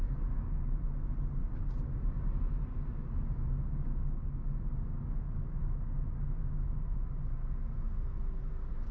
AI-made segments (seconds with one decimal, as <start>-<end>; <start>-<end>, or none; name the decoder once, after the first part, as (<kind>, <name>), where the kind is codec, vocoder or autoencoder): 1.4-2.3 (vocoder, BigVGAN v2)